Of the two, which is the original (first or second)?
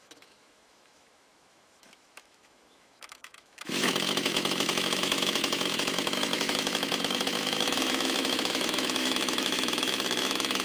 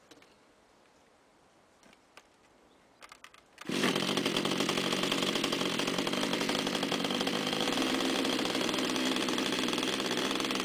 second